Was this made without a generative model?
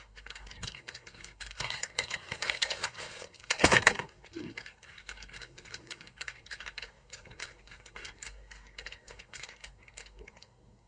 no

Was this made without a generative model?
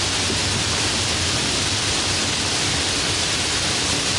yes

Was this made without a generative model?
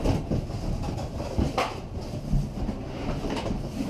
yes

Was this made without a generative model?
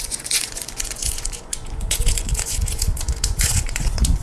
no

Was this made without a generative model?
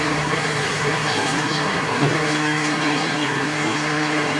no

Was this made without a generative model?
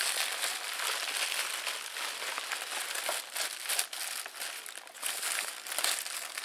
yes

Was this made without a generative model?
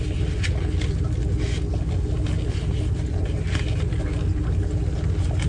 yes